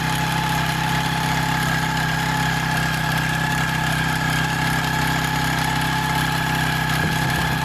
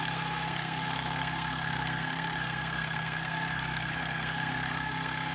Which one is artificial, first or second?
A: second